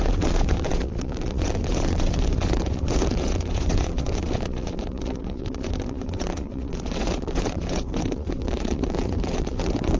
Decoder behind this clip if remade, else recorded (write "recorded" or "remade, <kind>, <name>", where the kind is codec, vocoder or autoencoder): remade, vocoder, WaveNeXt